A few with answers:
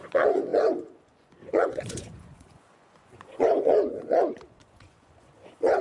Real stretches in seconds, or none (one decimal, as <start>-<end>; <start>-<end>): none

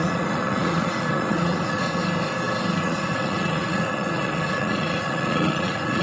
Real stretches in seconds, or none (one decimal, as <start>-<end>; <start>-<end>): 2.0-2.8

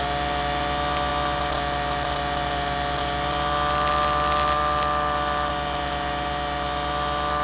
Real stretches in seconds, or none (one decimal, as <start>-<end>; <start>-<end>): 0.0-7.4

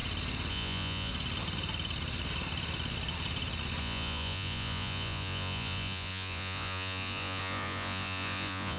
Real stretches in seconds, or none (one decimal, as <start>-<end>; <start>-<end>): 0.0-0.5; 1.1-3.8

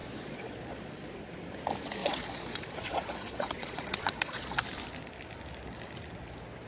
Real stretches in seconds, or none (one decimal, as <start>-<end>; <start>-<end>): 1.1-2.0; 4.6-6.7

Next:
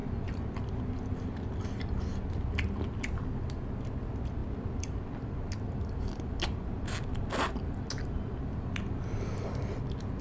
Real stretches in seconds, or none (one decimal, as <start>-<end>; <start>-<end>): 0.0-10.2